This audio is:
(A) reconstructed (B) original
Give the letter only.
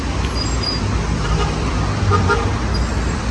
B